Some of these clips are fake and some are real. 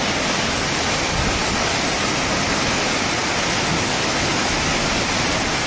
real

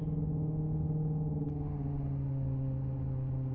real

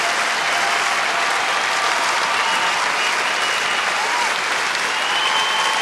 real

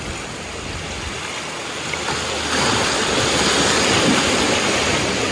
real